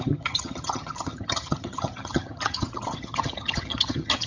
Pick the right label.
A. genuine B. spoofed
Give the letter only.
B